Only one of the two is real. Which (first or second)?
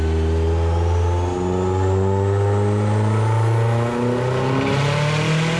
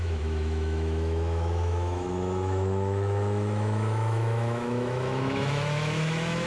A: first